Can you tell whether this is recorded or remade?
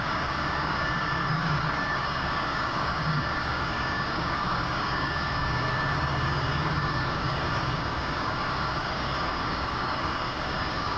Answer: remade